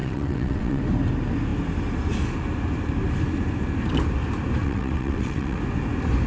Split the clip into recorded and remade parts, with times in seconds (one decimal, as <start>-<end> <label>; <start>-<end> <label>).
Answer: 0.0-0.8 remade; 0.8-4.6 recorded; 4.6-5.6 remade; 5.6-6.3 recorded